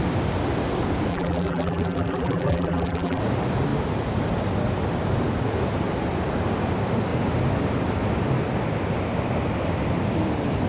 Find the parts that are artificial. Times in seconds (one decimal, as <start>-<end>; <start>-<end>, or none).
1.1-3.2

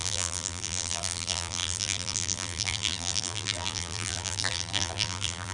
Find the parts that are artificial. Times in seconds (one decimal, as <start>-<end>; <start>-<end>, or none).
0.0-5.5

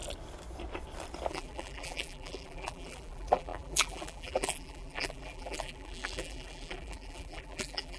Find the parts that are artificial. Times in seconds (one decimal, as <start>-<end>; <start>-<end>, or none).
1.3-8.0

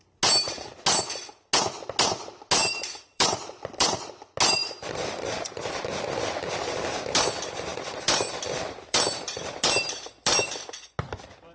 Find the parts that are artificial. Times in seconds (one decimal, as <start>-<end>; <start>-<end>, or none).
2.6-4.1; 4.6-5.6; 7.7-10.9